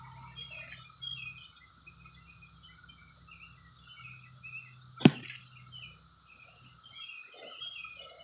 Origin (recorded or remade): recorded